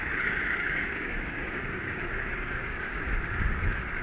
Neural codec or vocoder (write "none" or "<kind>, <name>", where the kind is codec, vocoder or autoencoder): codec, DAC